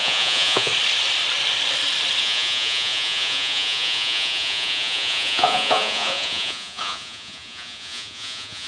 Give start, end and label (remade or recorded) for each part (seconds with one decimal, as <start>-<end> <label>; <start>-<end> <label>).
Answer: 0.0-0.7 remade; 0.7-2.2 recorded; 2.2-8.7 remade